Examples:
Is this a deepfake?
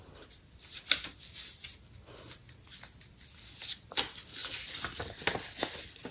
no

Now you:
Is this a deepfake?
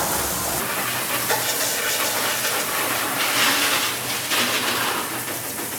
no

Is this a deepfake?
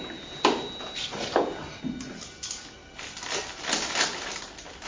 no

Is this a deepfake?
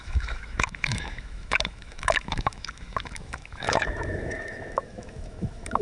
yes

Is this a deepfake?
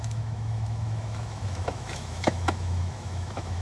yes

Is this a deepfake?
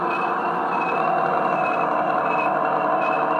no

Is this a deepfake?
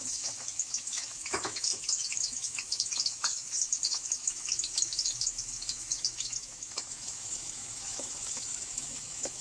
yes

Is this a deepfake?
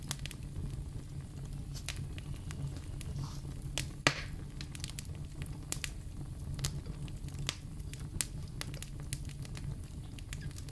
no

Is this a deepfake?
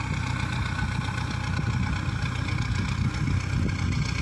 no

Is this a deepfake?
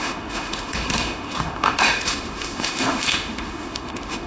yes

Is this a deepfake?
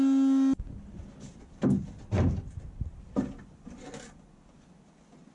no